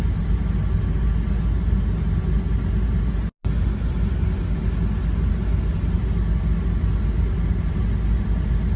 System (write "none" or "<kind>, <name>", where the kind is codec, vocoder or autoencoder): none